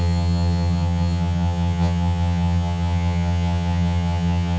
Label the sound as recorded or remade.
remade